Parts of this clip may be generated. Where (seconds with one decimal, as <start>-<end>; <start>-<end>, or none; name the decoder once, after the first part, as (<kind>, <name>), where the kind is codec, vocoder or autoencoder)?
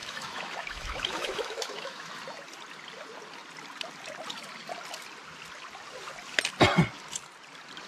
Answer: 0.0-2.1 (autoencoder, DAC-VAE)